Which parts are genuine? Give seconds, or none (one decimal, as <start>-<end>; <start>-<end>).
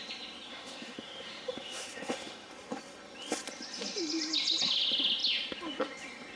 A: 0.0-0.5; 2.5-6.4